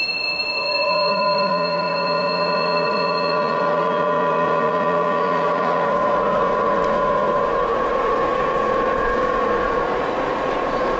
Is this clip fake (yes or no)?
yes